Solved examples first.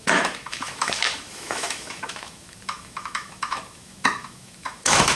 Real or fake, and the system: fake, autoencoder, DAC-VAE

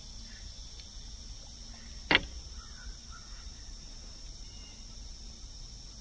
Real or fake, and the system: real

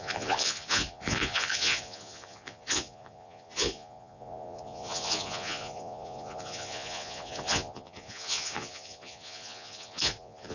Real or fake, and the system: fake, vocoder, Vocos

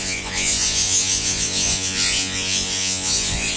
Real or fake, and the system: fake, vocoder, Vocos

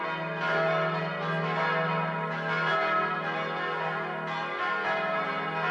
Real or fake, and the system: real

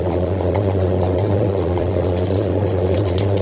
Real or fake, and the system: fake, vocoder, Vocos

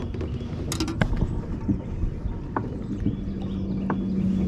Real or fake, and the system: real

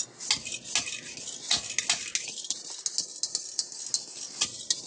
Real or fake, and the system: real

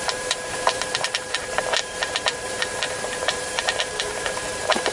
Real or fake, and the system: fake, vocoder, BigVGAN v2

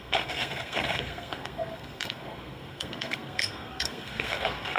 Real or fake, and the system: fake, codec, SNAC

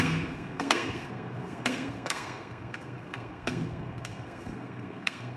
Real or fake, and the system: fake, codec, SNAC